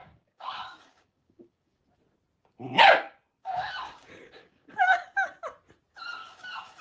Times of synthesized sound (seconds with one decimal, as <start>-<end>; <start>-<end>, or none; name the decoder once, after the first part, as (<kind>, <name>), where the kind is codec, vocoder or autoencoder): 0.0-1.8 (codec, DAC); 3.4-5.4; 6.2-6.8